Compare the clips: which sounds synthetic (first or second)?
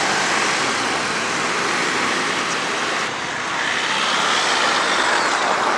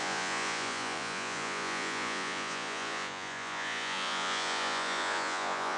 second